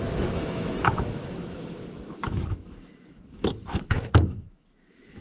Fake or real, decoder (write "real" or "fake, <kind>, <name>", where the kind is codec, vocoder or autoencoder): fake, autoencoder, DAC-VAE